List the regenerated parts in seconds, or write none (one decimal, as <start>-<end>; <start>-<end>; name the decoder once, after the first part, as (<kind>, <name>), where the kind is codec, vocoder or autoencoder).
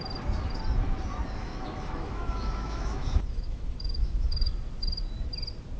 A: 1.4-4.5 (autoencoder, DAC-VAE)